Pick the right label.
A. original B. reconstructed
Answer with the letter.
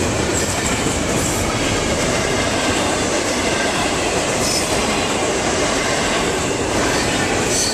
B